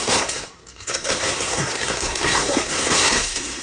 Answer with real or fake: fake